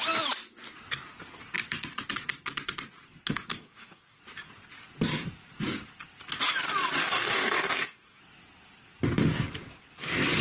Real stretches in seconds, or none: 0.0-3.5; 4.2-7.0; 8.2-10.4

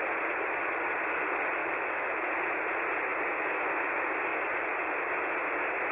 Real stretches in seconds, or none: 0.0-1.6; 2.2-5.9

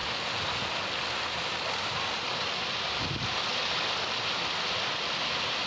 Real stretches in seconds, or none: 0.0-5.7

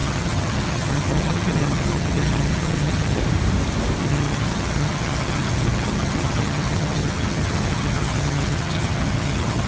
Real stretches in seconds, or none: 3.2-4.0

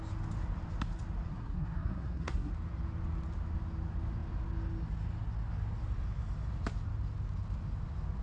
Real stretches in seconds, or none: 0.0-1.3; 2.5-8.2